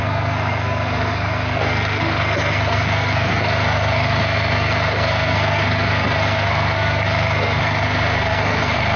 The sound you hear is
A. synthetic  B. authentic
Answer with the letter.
A